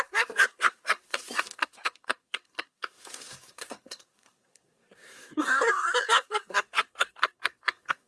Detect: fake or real fake